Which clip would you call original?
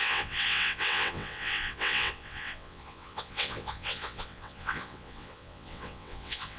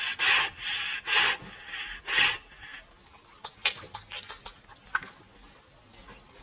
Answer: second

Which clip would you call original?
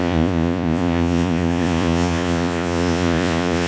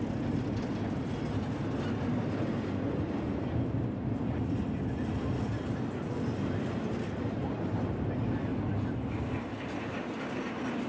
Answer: second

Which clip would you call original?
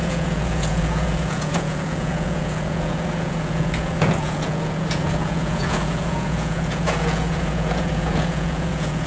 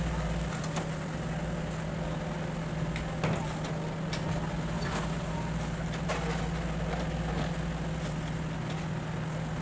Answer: second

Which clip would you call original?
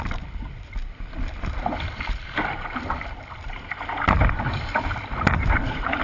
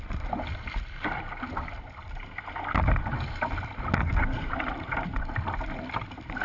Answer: second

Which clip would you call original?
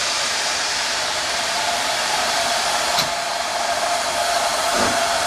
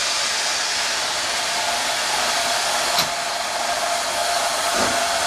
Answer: second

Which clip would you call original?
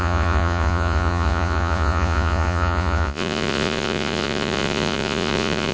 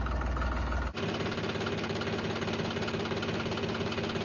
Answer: second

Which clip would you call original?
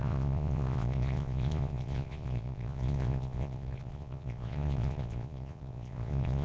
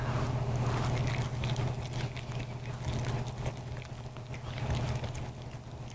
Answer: second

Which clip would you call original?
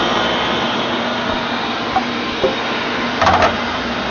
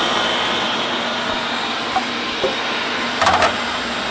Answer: first